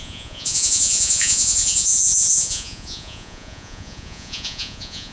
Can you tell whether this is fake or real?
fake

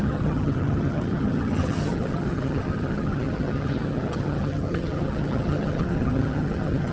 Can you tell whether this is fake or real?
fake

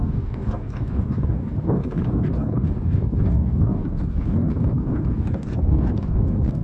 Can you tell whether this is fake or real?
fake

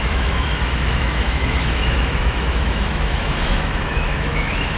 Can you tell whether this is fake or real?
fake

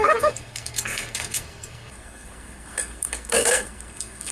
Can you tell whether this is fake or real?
fake